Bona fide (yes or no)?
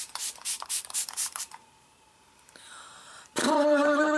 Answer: no